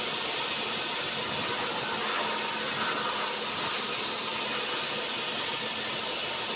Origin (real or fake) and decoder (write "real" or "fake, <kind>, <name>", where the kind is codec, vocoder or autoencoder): real